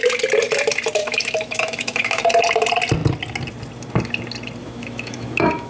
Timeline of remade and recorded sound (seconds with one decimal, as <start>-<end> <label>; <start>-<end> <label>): 0.0-1.0 recorded; 1.0-2.2 remade; 2.2-4.6 recorded; 4.6-5.7 remade